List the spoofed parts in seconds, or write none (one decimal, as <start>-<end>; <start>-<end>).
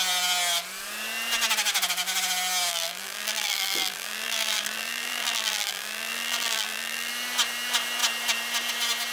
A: 2.7-7.1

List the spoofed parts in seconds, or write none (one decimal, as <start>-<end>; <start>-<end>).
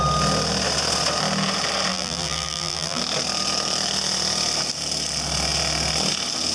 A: 1.9-3.0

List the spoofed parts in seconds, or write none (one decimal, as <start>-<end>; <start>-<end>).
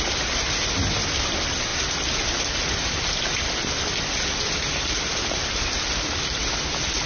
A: none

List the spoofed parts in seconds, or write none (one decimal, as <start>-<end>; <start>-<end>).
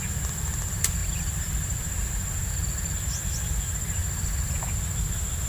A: none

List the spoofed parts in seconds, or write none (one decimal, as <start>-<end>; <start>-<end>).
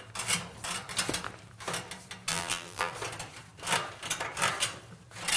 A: 2.3-2.9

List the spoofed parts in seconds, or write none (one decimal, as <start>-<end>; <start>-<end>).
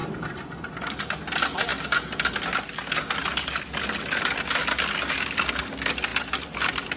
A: 0.0-1.2; 6.1-7.0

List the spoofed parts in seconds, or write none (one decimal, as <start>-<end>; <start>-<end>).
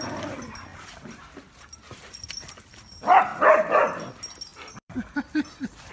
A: 3.3-4.1; 4.5-5.9